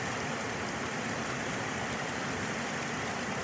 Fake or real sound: fake